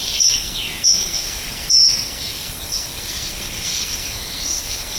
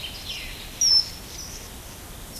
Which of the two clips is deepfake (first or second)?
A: first